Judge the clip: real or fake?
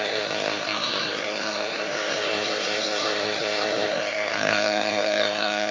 fake